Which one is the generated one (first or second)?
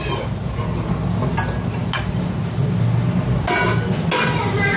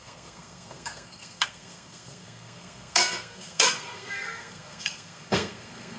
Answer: second